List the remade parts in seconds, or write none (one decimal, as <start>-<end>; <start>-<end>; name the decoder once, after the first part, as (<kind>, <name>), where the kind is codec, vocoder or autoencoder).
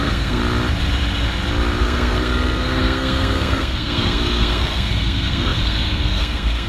0.0-0.4 (codec, SNAC); 1.8-6.7